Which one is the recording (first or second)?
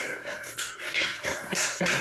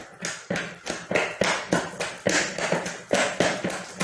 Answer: second